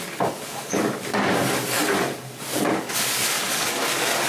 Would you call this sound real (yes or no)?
no